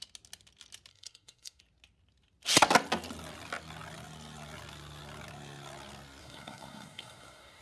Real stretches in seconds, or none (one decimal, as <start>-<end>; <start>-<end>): 0.0-0.9; 1.6-6.2